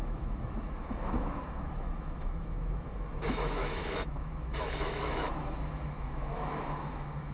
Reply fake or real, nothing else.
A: fake